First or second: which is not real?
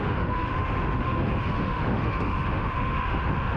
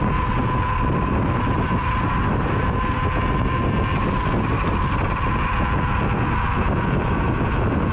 first